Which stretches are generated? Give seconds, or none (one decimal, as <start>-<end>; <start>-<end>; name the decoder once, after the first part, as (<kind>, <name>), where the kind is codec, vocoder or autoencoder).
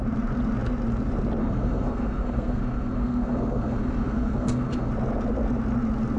1.4-4.9 (codec, SNAC)